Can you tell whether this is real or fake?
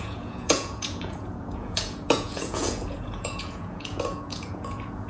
fake